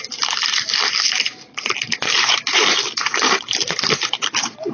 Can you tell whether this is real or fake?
fake